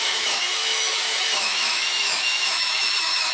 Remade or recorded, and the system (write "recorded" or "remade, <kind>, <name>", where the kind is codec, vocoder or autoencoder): remade, autoencoder, DAC-VAE